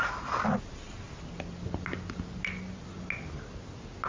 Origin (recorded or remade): recorded